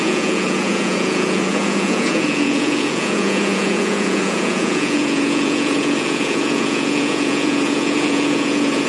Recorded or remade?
remade